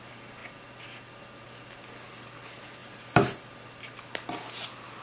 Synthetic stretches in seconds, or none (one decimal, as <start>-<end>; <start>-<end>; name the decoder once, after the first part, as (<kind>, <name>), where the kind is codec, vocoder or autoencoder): none